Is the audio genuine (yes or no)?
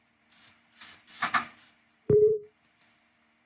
no